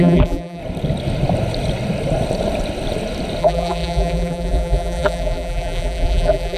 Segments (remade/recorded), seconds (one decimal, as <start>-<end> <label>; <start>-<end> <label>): 0.0-0.6 remade; 0.6-3.4 recorded; 3.4-6.6 remade